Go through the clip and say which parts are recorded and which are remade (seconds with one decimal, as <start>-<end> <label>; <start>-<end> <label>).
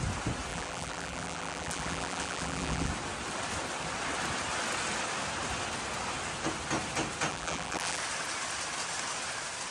0.0-0.5 recorded; 0.5-2.9 remade; 2.9-7.3 recorded; 7.3-8.0 remade; 8.0-9.7 recorded